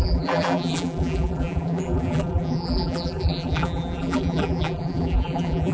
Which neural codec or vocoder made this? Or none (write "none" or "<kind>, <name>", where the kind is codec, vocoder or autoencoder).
vocoder, BigVGAN v2